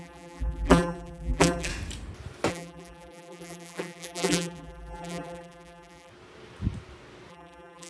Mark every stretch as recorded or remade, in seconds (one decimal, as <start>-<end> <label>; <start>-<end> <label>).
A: 0.0-1.7 remade; 1.7-2.5 recorded; 2.5-6.1 remade; 6.1-7.3 recorded; 7.3-7.9 remade